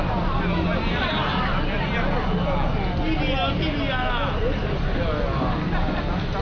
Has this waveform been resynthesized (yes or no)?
no